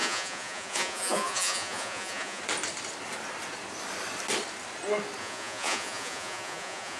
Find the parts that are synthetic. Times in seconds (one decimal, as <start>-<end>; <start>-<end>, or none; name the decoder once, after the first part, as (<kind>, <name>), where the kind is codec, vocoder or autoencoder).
0.0-2.4 (vocoder, Vocos); 5.2-7.0